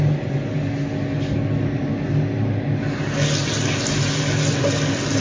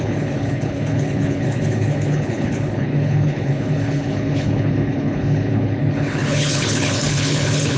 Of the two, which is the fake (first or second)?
second